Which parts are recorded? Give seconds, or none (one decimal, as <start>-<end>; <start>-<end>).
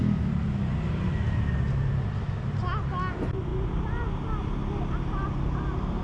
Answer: 0.0-6.0